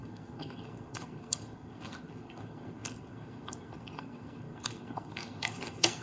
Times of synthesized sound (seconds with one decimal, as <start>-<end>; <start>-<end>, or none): 0.0-6.0